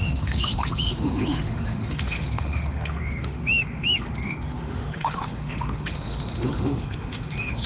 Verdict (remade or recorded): remade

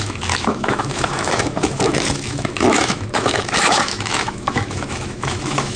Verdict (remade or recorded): remade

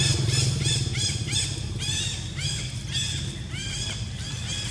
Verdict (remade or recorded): recorded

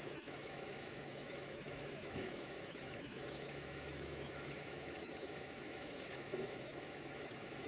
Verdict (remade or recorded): remade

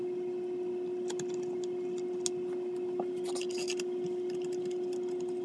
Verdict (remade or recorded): recorded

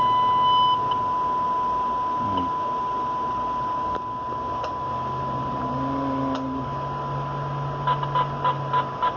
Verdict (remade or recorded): recorded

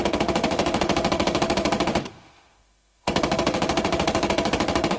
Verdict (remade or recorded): remade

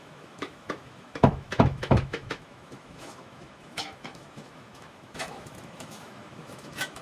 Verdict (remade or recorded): remade